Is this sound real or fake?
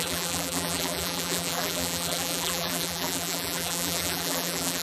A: fake